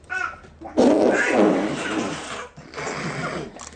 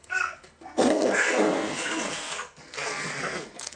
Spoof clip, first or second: second